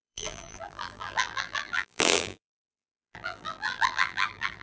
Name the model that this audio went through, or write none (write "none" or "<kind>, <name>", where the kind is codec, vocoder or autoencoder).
vocoder, BigVGAN v2